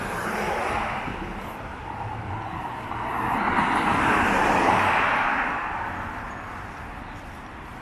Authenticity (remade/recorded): recorded